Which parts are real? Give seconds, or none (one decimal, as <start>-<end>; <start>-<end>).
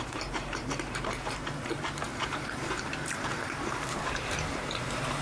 none